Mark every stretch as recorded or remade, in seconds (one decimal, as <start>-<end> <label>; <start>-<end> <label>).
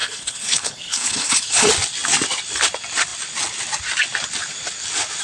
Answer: 0.0-1.7 remade; 1.7-5.2 recorded